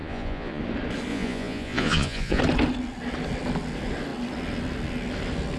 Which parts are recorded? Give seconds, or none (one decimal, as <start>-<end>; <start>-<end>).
0.6-1.1; 2.4-5.6